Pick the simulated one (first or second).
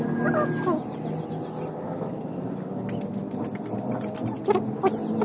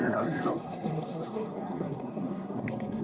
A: second